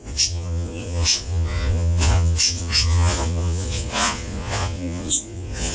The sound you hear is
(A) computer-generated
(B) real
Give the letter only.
A